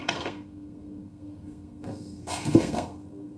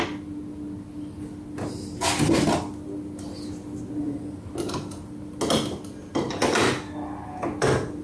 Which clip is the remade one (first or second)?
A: first